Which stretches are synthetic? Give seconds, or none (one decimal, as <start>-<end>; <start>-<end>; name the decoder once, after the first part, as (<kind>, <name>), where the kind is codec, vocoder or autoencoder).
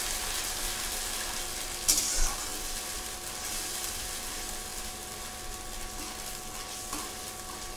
none